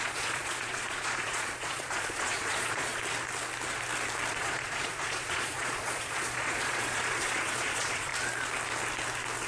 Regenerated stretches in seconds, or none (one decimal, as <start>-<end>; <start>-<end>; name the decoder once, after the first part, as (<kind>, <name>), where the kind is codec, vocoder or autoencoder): 0.0-3.0 (vocoder, Vocos); 4.3-8.1